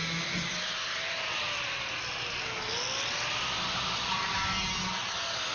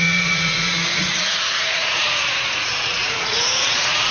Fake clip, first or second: second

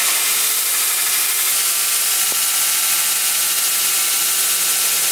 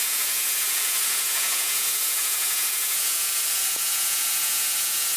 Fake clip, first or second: second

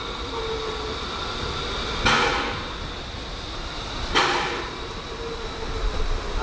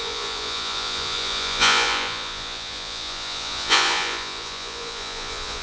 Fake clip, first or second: second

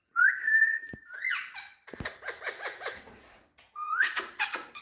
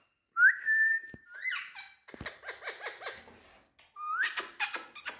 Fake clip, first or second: first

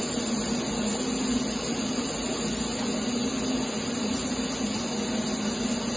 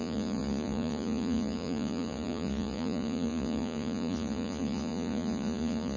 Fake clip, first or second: second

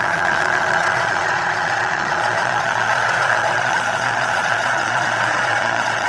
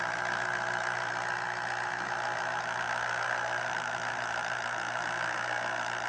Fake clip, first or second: first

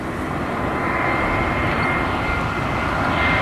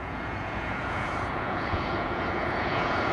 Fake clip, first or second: second